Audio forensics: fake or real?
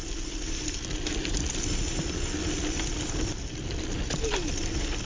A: real